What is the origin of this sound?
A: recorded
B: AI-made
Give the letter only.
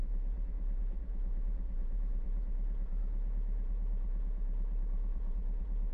B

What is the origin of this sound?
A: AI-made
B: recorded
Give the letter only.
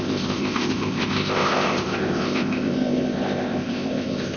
A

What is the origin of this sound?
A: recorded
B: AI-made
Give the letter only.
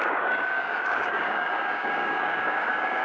B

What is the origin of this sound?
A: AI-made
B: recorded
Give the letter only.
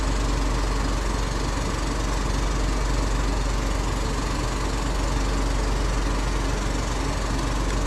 B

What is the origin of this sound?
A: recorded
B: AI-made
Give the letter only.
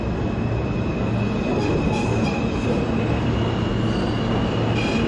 A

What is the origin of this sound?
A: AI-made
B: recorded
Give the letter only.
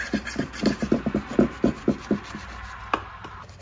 B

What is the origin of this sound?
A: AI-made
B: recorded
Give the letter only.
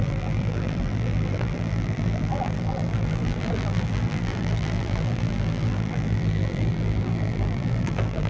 A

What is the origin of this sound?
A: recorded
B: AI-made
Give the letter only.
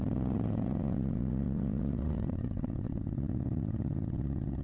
B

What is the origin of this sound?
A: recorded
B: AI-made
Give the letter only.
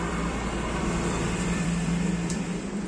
B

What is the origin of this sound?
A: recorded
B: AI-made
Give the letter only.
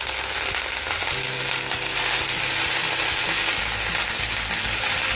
A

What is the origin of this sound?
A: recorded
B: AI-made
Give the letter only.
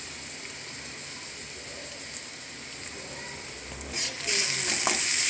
A